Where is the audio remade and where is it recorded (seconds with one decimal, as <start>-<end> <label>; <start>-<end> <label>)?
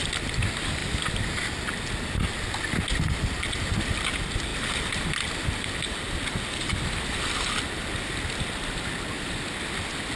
0.0-10.2 recorded